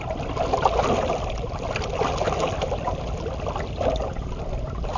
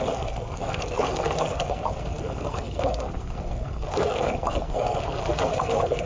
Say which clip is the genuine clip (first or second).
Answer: first